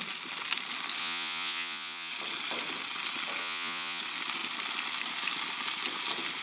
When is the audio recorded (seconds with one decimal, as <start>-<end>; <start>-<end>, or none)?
0.0-1.0; 2.1-3.4; 4.0-6.4